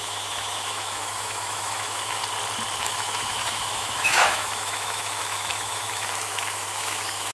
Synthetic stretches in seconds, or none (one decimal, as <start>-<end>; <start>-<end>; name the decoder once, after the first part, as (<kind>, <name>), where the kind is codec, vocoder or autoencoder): 0.0-2.2 (autoencoder, DAC-VAE); 2.8-7.3